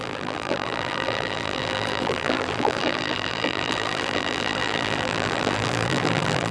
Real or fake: fake